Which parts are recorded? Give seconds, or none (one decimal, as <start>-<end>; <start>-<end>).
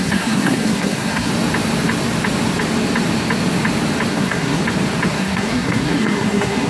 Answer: 1.3-4.1; 4.6-5.1